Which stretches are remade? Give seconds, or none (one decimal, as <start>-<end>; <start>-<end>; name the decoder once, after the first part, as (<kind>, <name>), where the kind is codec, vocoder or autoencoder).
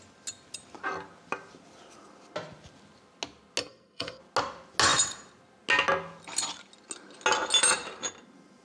3.6-4.2 (codec, SNAC)